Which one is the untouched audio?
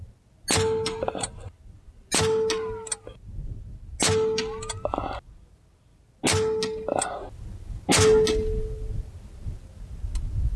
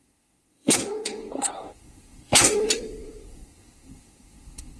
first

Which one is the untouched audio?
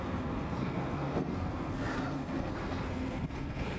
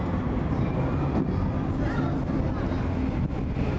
second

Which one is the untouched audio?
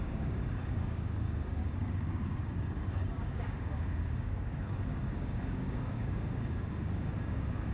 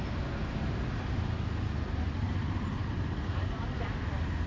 second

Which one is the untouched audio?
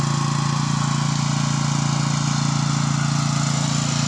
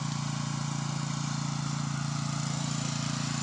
first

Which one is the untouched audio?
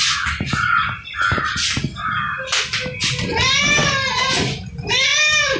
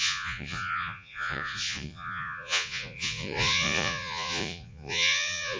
first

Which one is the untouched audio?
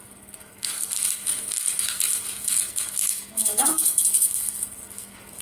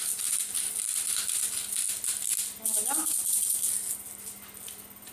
second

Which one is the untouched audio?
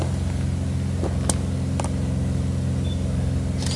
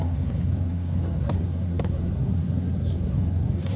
first